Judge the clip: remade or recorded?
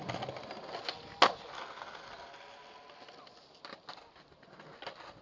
recorded